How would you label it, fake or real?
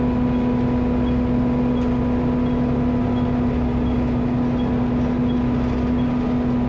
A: real